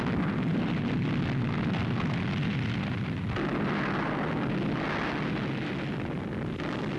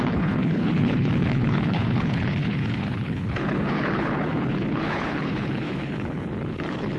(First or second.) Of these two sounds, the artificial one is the second